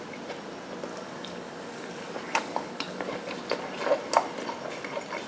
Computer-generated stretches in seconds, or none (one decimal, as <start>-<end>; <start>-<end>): 0.9-3.4